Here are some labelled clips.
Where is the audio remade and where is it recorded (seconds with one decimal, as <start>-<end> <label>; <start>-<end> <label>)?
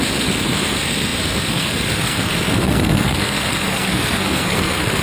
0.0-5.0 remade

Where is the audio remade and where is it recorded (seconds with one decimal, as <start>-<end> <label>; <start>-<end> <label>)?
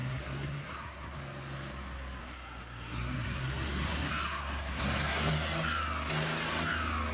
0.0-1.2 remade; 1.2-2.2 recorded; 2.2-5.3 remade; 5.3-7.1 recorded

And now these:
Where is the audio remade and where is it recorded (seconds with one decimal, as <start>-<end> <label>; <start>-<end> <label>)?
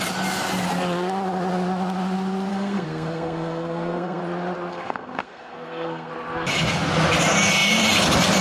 0.0-2.5 recorded; 2.5-4.2 remade; 4.2-4.7 recorded; 4.7-6.1 remade; 6.1-8.4 recorded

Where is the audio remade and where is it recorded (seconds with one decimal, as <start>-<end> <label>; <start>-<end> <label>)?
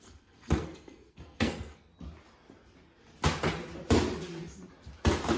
0.0-1.9 remade; 1.9-5.4 recorded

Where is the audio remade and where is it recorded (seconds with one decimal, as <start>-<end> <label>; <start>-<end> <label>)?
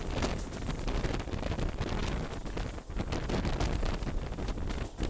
0.0-5.1 recorded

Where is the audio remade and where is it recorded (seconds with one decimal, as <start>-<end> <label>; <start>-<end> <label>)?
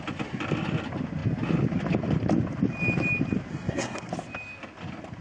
0.0-3.5 recorded; 3.5-4.1 remade; 4.1-5.2 recorded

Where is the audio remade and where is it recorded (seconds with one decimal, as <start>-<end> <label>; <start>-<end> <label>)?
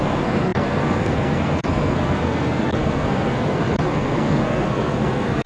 0.0-5.5 remade